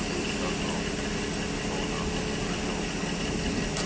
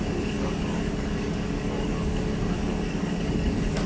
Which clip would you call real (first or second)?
first